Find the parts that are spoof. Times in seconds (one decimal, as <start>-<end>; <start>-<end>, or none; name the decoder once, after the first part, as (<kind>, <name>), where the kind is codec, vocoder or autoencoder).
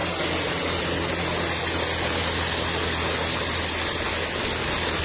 none